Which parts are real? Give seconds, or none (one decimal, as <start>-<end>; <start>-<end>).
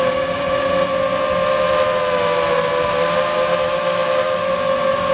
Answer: 0.0-3.5; 4.5-5.1